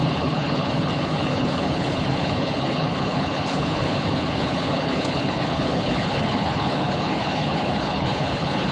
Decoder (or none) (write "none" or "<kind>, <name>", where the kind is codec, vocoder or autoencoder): codec, HILCodec